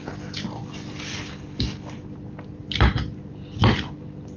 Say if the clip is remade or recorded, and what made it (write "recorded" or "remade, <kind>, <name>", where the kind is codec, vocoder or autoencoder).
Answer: recorded